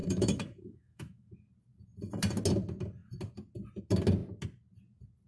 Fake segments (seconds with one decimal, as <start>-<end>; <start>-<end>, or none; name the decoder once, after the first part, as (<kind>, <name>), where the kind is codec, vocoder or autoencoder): 0.0-1.3 (autoencoder, DAC-VAE)